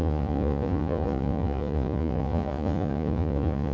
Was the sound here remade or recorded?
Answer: remade